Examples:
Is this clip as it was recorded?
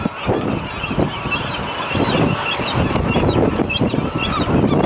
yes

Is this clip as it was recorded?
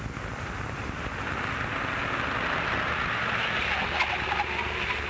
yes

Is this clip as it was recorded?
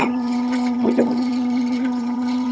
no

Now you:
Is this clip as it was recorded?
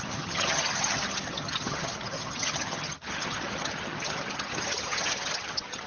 no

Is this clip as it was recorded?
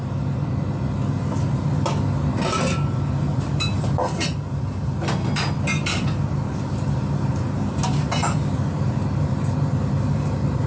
yes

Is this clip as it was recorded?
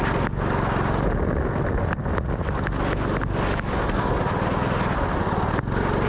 yes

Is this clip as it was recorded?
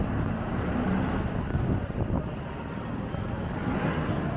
yes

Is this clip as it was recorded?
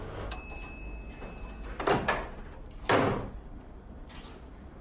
yes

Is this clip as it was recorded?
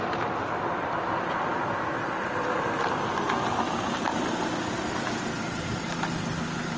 yes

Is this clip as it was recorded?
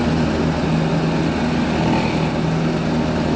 yes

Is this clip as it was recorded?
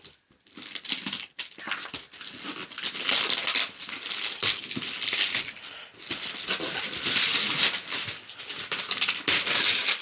yes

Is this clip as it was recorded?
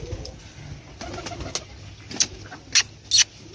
yes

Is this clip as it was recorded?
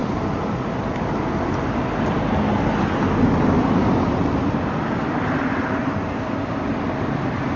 yes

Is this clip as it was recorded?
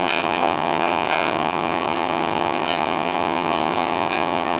no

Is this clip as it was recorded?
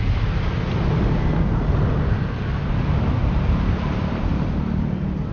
yes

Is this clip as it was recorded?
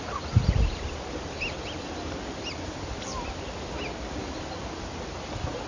yes